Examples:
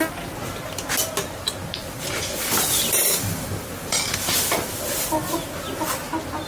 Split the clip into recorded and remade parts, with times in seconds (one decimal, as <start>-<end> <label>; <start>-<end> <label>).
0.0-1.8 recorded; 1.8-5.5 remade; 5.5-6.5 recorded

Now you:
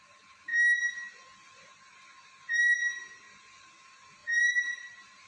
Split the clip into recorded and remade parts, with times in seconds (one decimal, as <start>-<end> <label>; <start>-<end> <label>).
0.0-4.2 recorded; 4.2-5.3 remade

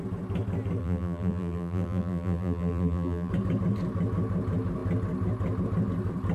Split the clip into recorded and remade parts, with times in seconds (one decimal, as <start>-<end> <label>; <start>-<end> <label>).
0.0-0.8 recorded; 0.8-3.3 remade; 3.3-6.3 recorded

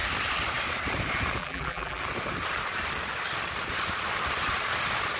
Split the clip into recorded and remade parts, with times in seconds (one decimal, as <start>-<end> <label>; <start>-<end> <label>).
0.0-1.4 recorded; 1.4-2.0 remade; 2.0-5.2 recorded

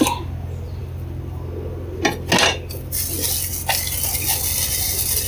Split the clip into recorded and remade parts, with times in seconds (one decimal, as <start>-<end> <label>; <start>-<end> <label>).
0.0-5.3 recorded

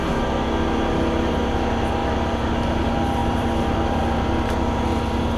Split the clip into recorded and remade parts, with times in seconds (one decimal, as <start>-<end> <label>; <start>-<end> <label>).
0.0-3.2 recorded; 3.2-4.0 remade; 4.0-5.4 recorded